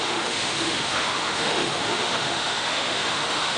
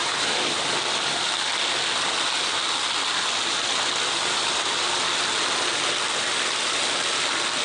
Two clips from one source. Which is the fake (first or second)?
first